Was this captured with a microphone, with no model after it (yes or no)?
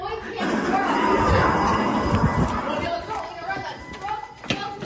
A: yes